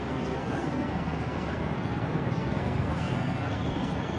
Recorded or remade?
remade